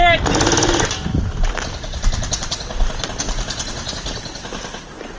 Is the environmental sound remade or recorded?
recorded